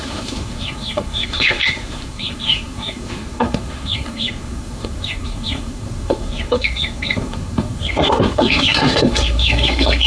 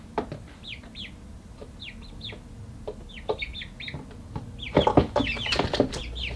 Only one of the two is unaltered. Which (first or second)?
second